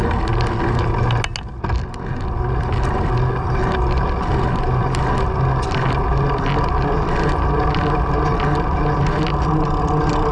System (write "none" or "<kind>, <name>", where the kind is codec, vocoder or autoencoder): none